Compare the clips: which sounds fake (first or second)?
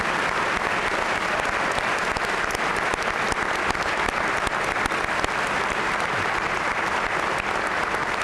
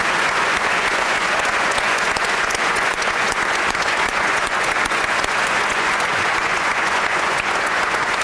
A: second